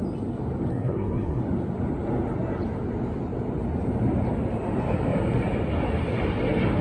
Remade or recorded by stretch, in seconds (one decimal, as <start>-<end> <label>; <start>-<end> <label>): 0.0-0.7 recorded; 0.7-1.4 remade; 1.4-6.8 recorded